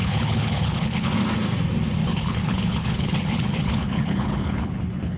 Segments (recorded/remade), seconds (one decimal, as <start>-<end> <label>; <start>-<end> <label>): 0.0-1.1 remade; 1.1-2.0 recorded; 2.0-5.2 remade